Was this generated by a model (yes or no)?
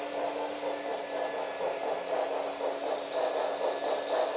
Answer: no